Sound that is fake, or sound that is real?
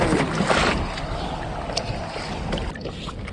real